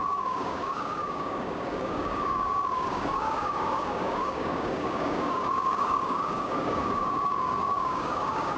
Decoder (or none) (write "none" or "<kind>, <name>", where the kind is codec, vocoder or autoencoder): codec, DAC